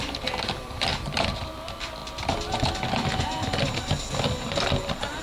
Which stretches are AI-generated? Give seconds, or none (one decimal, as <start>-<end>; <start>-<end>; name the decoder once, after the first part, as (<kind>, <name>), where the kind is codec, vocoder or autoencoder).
0.0-0.9 (vocoder, BigVGAN v2); 1.5-2.0